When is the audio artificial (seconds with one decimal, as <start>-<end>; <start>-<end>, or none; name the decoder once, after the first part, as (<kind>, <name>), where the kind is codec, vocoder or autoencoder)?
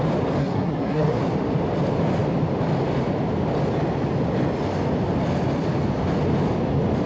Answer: 0.4-1.2 (codec, SNAC)